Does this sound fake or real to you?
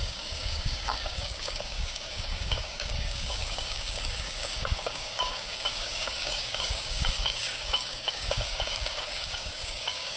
fake